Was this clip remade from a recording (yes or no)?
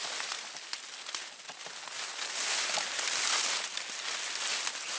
no